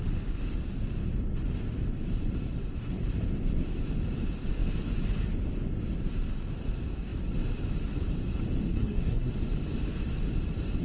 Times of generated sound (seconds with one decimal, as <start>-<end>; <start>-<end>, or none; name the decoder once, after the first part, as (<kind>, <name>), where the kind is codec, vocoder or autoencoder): 8.7-9.3 (codec, SNAC)